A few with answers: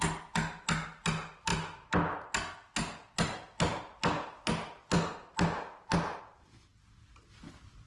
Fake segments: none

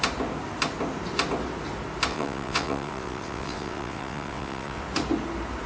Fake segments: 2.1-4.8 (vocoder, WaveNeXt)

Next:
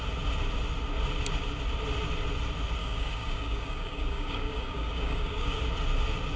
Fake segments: 2.8-5.6 (codec, DAC)

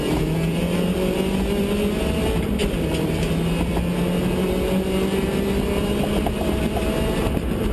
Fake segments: 2.6-3.7 (vocoder, BigVGAN v2)

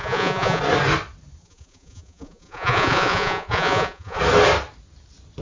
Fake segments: 0.0-0.6 (vocoder, Vocos); 1.4-4.2

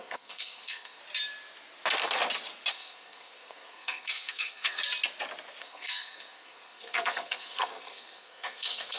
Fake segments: 0.0-1.0 (codec, SNAC); 2.7-4.8; 5.6-9.0